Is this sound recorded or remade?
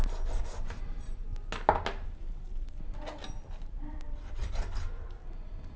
recorded